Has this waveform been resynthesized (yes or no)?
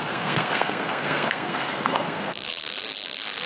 yes